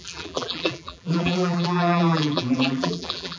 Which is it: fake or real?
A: fake